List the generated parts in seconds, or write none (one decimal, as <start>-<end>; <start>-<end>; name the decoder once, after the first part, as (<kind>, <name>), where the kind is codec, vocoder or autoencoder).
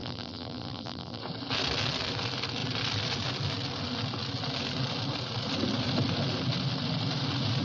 0.0-1.2 (vocoder, BigVGAN v2)